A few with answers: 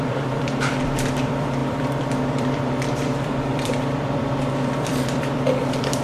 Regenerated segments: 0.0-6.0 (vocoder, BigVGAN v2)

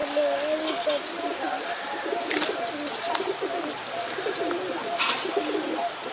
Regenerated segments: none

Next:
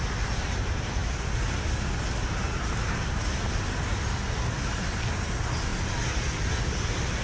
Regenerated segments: none